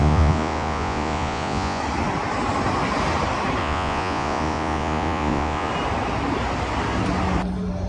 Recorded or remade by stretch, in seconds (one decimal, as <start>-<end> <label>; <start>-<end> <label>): 0.0-1.8 remade; 1.8-3.6 recorded; 3.6-5.7 remade; 5.7-7.9 recorded